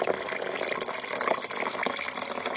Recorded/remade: recorded